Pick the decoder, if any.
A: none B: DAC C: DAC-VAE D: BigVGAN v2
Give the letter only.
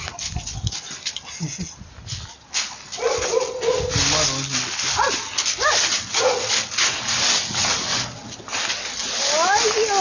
A